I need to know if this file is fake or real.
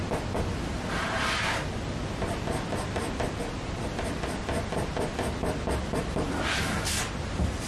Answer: real